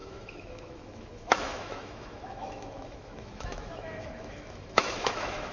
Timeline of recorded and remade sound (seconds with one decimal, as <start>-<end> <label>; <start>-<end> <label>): 0.0-5.5 remade